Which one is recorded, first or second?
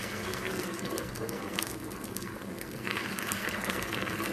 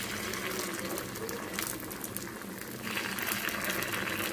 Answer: second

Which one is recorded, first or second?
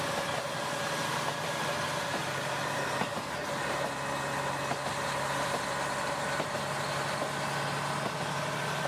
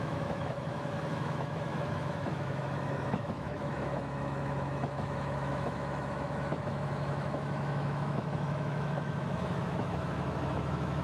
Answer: first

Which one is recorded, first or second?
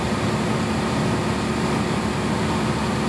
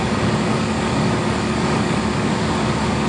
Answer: first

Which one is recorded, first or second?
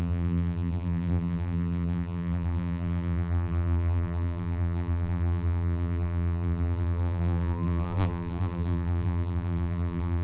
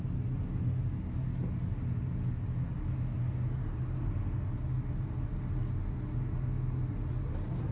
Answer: second